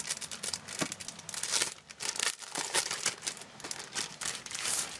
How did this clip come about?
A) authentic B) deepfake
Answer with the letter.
A